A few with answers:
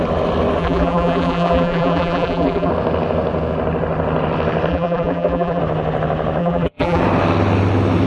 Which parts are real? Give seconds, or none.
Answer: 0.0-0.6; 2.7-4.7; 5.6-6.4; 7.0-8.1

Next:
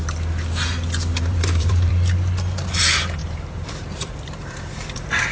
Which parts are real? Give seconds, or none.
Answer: 0.0-1.1; 1.9-3.2; 4.8-5.3

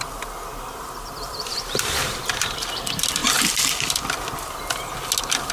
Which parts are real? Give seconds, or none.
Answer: 0.0-0.5; 2.2-3.2; 4.6-5.5

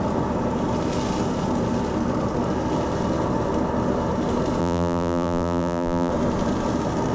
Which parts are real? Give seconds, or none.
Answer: 0.0-4.6; 6.1-7.1